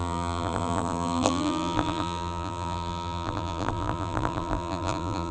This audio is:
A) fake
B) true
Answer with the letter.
A